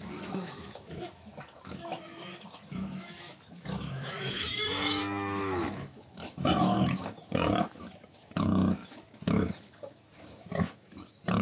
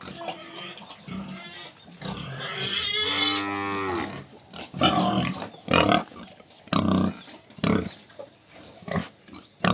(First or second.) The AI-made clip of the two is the first